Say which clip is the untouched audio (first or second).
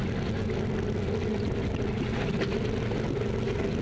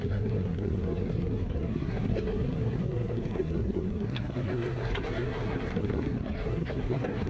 first